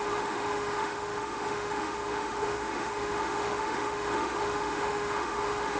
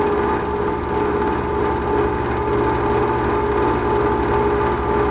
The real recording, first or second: second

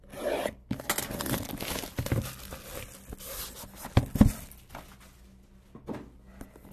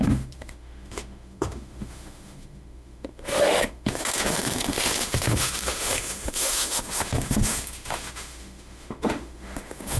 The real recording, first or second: first